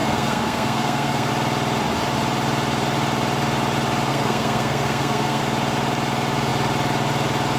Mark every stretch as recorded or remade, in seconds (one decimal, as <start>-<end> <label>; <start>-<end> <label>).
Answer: 0.0-1.3 remade; 1.3-4.1 recorded; 4.1-5.4 remade; 5.4-7.6 recorded